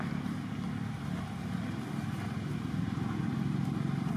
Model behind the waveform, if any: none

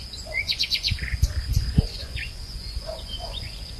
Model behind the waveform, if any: vocoder, Vocos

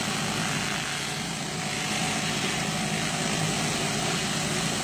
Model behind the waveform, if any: none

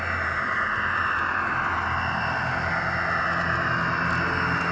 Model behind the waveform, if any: none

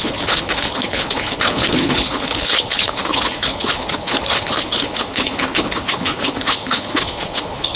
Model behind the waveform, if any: codec, HILCodec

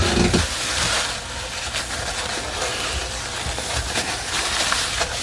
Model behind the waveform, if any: none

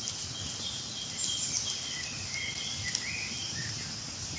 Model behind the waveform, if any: none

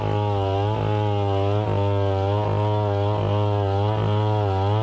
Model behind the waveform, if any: none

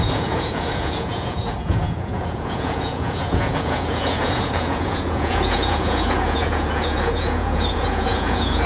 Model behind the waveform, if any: vocoder, Vocos